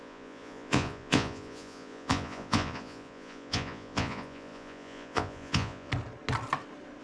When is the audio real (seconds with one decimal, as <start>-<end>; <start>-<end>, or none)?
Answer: 5.9-7.0